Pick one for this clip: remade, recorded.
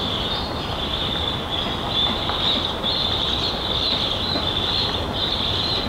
recorded